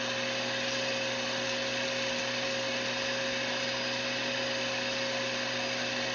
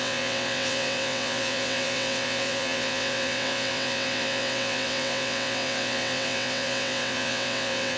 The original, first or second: first